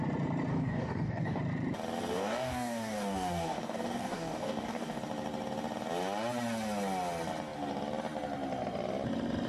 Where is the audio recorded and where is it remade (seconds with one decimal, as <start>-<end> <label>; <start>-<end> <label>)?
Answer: 0.0-0.5 recorded; 0.5-1.4 remade; 1.4-2.1 recorded; 2.1-5.0 remade; 5.0-9.5 recorded